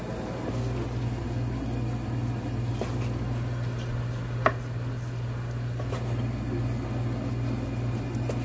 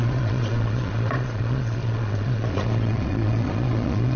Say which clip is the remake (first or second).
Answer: second